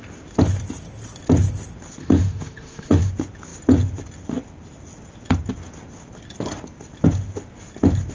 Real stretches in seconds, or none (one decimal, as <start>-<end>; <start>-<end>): 0.0-2.0; 3.1-8.1